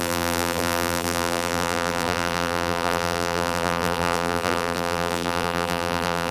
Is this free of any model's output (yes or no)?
no